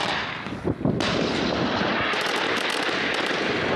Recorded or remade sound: recorded